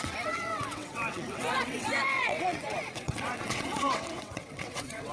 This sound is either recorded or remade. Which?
remade